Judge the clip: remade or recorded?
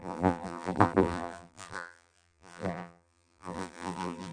remade